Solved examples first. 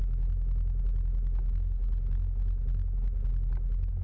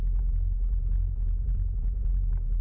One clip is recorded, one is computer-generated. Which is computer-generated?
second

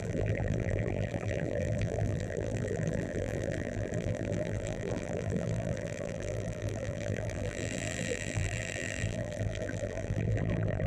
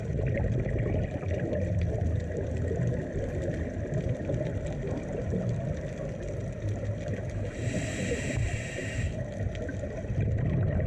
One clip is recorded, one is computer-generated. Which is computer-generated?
first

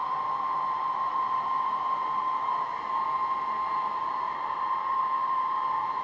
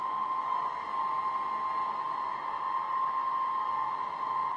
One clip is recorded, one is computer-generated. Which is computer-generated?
first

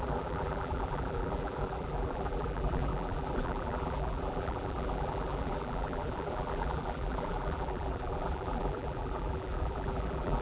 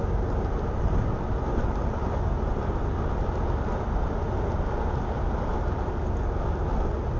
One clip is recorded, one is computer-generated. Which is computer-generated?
first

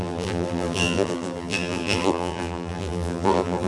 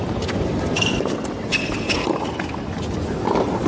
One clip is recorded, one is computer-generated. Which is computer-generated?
first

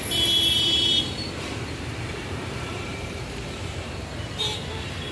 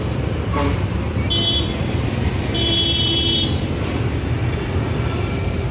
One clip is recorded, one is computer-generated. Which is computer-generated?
first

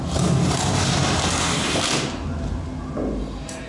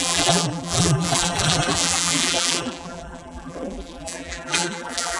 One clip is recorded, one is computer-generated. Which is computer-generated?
second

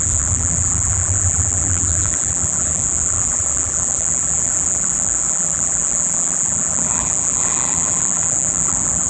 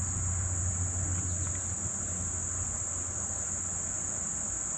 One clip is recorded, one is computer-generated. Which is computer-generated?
first